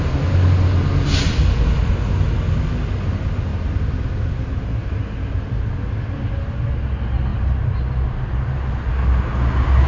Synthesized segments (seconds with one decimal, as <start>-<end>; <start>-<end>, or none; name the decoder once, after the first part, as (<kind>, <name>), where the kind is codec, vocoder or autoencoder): none